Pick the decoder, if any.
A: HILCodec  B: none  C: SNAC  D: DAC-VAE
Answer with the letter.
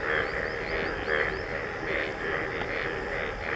B